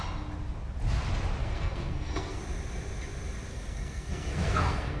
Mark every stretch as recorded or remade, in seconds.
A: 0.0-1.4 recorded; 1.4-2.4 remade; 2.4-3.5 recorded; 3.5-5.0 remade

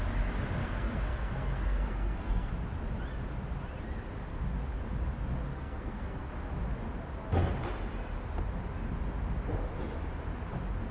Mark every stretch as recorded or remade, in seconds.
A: 0.0-0.6 recorded; 0.6-2.5 remade; 2.5-5.5 recorded; 5.5-6.3 remade; 6.3-10.9 recorded

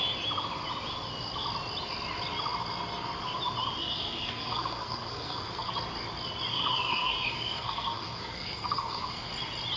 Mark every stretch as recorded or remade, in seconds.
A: 0.0-3.8 recorded; 3.8-5.7 remade; 5.7-6.5 recorded; 6.5-9.3 remade; 9.3-9.8 recorded

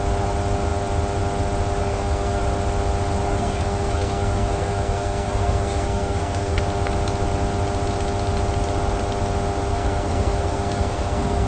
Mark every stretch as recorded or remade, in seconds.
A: 0.0-1.8 recorded; 1.8-2.4 remade; 2.4-3.3 recorded; 3.3-6.6 remade; 6.6-9.7 recorded; 9.7-11.5 remade

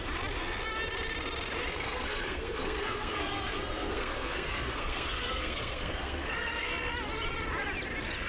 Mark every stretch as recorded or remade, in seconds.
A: 0.0-1.7 recorded; 1.7-6.7 remade; 6.7-8.3 recorded